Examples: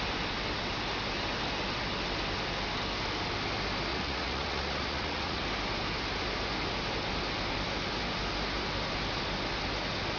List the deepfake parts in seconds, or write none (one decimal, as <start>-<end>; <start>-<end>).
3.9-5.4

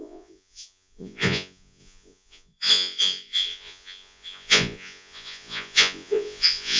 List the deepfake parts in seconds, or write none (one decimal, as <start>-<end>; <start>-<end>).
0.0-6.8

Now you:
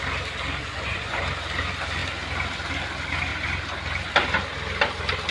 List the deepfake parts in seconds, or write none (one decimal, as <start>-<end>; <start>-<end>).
0.6-1.2

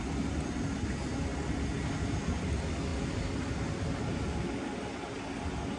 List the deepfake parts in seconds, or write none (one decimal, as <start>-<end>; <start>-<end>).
none

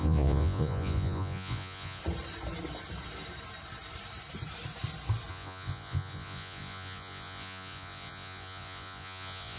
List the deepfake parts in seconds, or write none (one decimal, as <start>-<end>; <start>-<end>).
0.0-2.0; 5.3-9.6

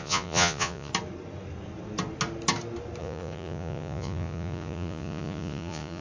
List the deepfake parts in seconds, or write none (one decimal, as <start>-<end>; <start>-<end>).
0.0-0.9; 3.0-6.0

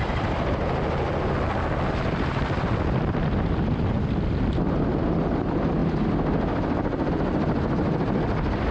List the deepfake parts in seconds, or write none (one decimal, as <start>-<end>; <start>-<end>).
none

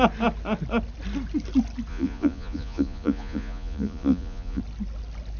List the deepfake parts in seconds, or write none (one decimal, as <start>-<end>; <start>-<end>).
1.9-4.6